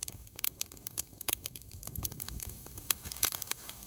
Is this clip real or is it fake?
fake